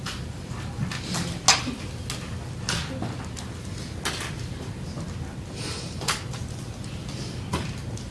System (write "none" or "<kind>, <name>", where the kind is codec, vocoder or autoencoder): none